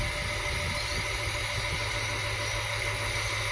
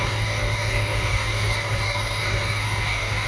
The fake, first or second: second